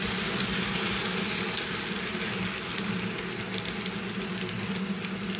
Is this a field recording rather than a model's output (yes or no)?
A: yes